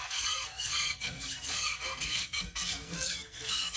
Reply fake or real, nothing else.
fake